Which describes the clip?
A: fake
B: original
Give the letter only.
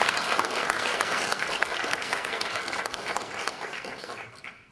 A